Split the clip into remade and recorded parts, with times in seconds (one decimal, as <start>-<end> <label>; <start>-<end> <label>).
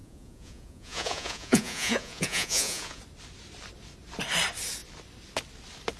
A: 0.0-3.0 remade; 3.0-6.0 recorded